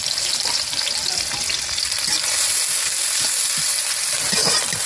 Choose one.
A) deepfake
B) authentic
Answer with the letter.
B